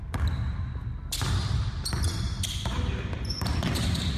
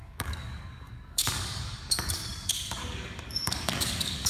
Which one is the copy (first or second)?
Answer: second